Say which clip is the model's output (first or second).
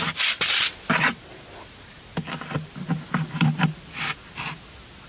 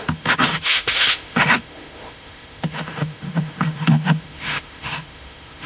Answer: second